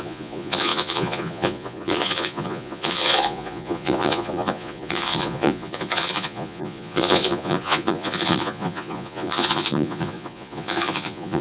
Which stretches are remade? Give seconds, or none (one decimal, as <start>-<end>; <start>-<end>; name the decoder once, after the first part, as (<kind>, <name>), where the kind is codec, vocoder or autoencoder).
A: 0.0-11.4 (vocoder, Vocos)